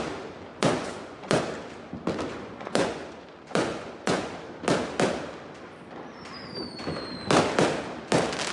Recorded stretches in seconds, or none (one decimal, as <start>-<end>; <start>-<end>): 0.0-0.5; 1.4-2.3; 4.3-8.5